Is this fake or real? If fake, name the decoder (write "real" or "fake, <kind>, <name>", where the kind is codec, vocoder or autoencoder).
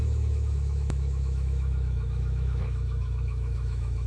fake, autoencoder, DAC-VAE